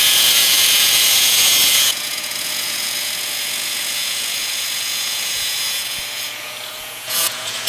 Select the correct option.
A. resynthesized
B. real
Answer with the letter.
A